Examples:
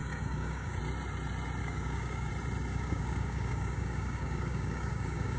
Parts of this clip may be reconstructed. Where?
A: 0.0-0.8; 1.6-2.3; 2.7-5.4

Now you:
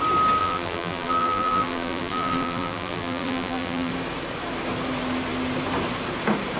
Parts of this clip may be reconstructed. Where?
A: 0.4-3.9

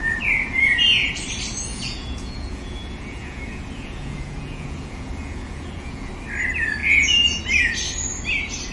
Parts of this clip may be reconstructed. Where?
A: 0.0-1.2; 1.7-6.1; 6.8-7.4

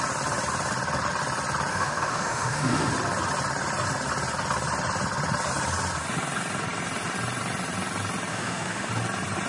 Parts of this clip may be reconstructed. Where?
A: 1.7-2.9; 8.3-8.9

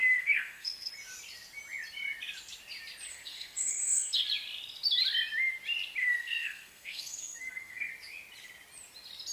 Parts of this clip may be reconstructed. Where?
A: 0.0-0.9; 3.1-4.2; 6.0-7.9

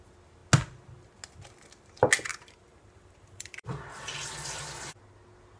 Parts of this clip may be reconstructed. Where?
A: 2.3-5.0

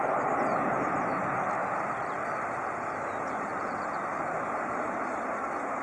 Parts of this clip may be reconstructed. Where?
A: none

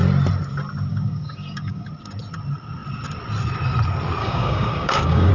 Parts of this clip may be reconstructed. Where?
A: 0.9-1.9; 4.2-5.3